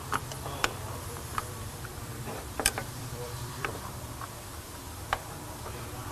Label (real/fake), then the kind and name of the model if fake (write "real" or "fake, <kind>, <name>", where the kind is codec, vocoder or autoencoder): fake, vocoder, BigVGAN v2